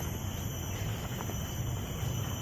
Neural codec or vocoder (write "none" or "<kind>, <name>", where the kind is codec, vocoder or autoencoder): none